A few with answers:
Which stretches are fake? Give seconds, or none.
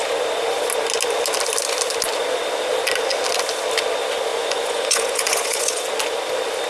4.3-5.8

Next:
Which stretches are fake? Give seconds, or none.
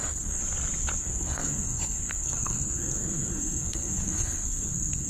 0.0-0.4; 1.0-5.1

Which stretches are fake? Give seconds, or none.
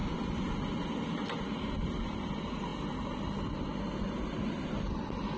none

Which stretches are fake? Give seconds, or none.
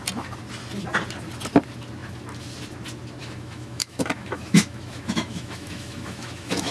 3.2-6.7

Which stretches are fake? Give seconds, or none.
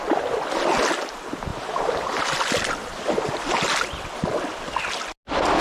none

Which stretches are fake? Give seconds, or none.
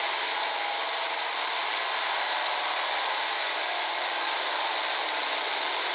none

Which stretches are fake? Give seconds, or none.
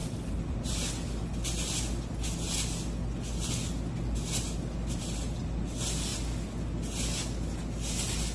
none